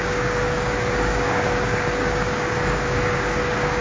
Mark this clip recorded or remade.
remade